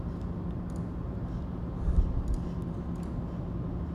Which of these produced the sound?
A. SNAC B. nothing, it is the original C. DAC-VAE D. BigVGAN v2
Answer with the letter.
B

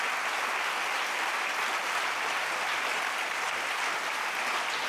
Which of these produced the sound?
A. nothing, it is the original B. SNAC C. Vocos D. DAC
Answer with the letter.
A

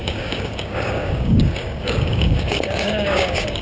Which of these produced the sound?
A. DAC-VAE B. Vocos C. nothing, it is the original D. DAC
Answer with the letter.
D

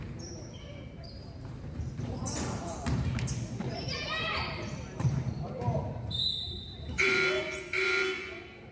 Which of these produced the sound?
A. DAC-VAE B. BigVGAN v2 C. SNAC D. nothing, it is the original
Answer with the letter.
B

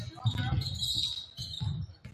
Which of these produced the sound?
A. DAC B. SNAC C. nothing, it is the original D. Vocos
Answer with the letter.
C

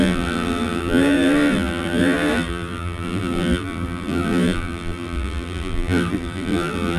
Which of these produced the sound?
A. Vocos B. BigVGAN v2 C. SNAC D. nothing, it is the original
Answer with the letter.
B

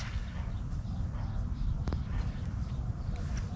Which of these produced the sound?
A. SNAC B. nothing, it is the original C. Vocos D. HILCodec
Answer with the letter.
B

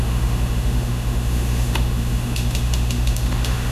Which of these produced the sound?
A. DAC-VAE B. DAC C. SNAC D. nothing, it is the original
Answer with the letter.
A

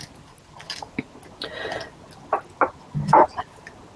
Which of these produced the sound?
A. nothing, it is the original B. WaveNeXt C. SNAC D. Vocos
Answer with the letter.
A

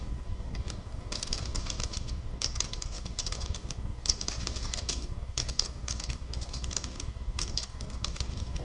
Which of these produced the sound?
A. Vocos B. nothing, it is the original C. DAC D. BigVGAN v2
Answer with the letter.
C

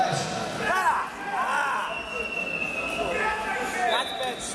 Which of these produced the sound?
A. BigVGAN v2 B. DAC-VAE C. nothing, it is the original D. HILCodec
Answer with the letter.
C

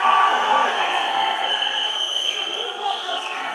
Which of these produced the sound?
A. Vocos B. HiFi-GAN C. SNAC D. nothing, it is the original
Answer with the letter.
C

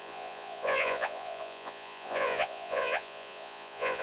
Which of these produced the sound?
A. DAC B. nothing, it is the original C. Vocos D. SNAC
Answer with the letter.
C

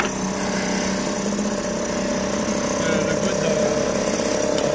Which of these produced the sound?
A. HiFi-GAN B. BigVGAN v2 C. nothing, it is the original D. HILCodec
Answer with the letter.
C